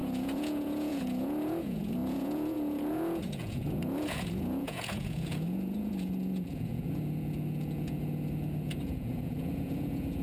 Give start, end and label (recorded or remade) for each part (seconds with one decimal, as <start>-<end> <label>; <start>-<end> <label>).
0.0-10.2 remade